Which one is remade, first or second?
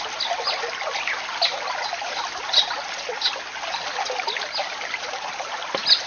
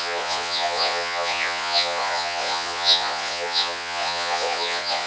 second